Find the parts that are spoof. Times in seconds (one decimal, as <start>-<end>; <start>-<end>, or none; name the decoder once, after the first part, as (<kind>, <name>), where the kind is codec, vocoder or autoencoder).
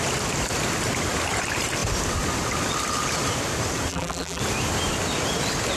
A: 3.9-4.4 (vocoder, BigVGAN v2)